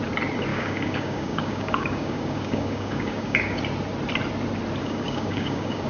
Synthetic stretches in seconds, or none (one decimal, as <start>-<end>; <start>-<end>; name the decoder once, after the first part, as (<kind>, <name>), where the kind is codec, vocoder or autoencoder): 0.5-3.6 (codec, DAC); 4.8-5.9